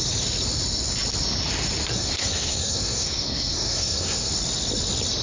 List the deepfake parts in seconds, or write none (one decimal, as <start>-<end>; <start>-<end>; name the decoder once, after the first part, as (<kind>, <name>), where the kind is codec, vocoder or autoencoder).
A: 1.9-4.3 (codec, SNAC)